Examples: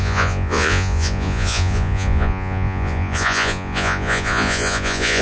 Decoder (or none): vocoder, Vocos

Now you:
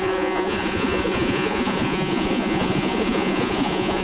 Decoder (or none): vocoder, Vocos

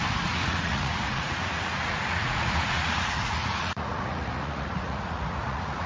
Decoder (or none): vocoder, Vocos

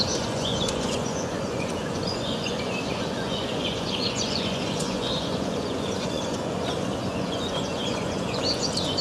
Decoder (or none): vocoder, Vocos